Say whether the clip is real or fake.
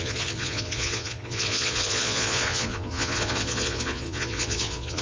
fake